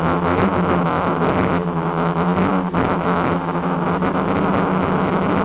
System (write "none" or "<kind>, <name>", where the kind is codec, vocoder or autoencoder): none